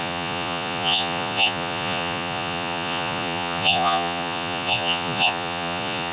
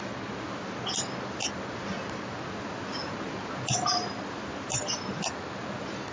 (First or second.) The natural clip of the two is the second